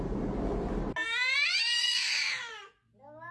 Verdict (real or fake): real